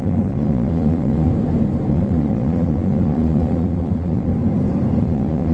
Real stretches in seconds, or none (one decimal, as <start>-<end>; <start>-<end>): 1.3-1.9; 4.3-5.0